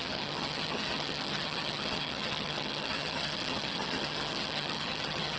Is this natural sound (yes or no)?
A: no